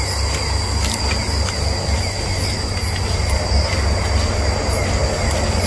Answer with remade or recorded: recorded